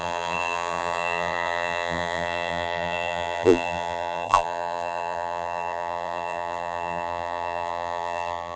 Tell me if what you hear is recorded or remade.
remade